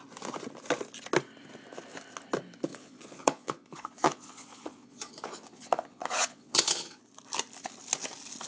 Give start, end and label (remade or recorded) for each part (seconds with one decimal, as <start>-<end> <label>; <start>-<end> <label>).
0.0-2.7 recorded; 2.7-7.0 remade; 7.0-8.5 recorded